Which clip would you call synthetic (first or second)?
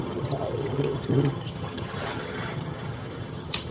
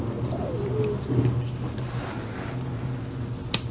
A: first